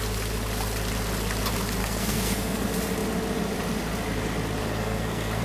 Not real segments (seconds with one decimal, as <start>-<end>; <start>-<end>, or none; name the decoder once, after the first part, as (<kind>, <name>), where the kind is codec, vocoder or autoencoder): 1.8-2.6 (codec, SNAC); 4.6-5.4